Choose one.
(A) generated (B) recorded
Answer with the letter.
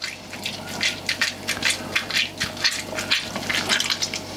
B